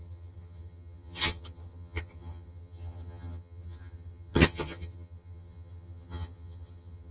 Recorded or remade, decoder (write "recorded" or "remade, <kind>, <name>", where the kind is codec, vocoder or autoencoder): remade, vocoder, HiFi-GAN